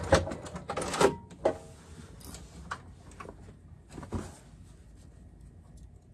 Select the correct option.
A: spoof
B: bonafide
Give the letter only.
B